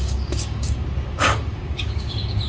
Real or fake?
fake